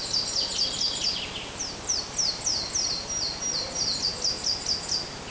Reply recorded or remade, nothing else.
recorded